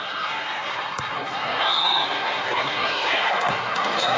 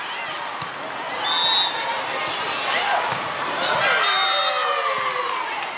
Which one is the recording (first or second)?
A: second